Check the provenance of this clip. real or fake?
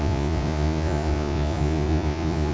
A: fake